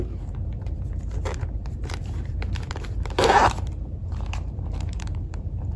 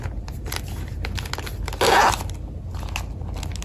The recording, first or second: second